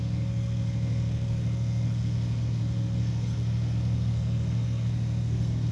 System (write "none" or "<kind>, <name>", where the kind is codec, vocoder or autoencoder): codec, SNAC